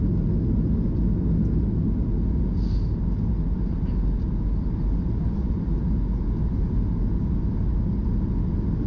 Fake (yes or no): no